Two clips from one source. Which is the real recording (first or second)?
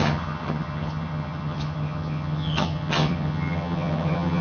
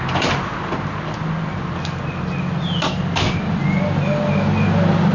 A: second